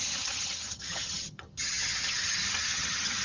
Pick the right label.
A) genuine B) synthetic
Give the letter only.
B